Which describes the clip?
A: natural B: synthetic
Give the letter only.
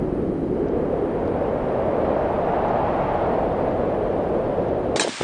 A